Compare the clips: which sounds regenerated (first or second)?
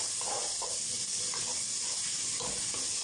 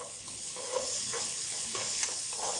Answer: second